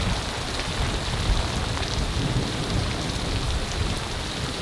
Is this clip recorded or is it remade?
recorded